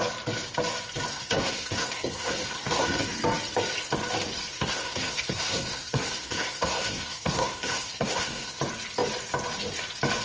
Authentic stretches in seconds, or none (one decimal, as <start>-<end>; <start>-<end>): 0.0-1.1; 3.1-4.5; 8.6-10.2